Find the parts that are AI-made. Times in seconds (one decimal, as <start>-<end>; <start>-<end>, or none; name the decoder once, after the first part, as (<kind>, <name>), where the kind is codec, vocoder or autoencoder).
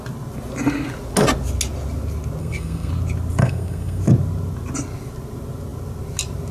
2.4-2.9 (codec, SNAC); 3.4-4.0